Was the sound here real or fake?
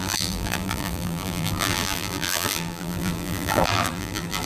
fake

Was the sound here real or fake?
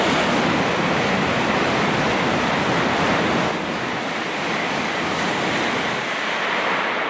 real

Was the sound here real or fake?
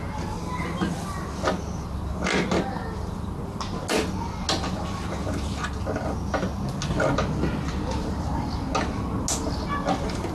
real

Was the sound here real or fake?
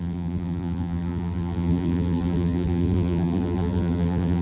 fake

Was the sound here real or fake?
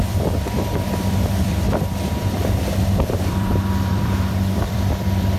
fake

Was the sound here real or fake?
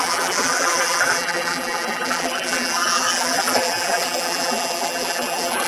fake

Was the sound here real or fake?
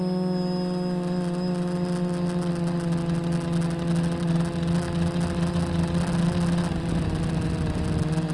real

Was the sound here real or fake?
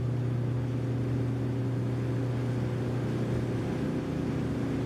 real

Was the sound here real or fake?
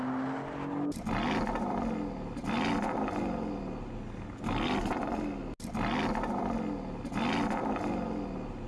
real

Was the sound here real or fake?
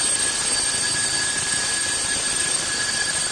real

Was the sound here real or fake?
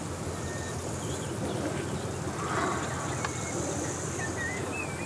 real